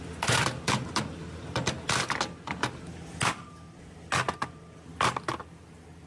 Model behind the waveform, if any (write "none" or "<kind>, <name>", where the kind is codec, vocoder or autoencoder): none